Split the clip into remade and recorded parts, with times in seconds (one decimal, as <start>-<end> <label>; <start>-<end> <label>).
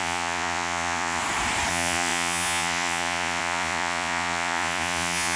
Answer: 0.0-1.2 remade; 1.2-1.7 recorded; 1.7-5.4 remade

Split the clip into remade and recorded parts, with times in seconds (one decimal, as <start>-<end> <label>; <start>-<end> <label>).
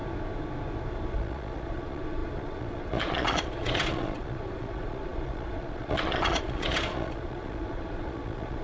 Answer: 0.0-1.1 recorded; 1.1-8.6 remade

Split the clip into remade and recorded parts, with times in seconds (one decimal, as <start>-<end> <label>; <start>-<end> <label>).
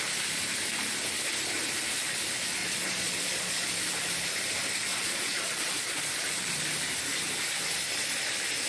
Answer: 0.0-2.6 recorded; 2.6-3.7 remade; 3.7-4.9 recorded; 4.9-6.1 remade; 6.1-8.7 recorded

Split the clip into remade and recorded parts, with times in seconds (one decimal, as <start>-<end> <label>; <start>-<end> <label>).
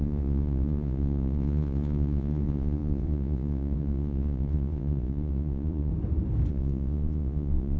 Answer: 0.0-5.9 remade; 5.9-6.5 recorded; 6.5-7.8 remade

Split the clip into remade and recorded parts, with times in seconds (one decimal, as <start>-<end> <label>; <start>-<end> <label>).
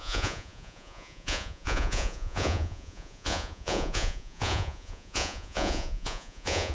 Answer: 0.0-6.7 remade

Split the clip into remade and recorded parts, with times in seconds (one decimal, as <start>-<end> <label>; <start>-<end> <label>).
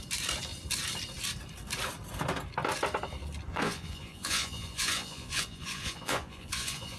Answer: 0.0-3.5 recorded; 3.5-7.0 remade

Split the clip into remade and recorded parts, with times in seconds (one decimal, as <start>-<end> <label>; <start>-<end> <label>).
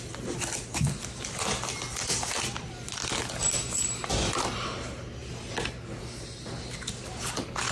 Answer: 0.0-7.7 recorded